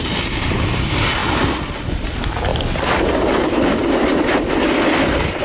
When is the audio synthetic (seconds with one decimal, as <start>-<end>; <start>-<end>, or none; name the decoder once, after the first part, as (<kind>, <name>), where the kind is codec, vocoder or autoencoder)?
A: none